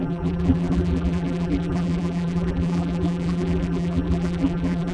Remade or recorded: remade